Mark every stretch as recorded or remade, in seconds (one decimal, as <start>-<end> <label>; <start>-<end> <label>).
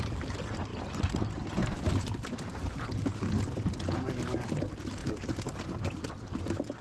0.0-6.8 recorded